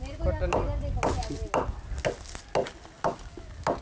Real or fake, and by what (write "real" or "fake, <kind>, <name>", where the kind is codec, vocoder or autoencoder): real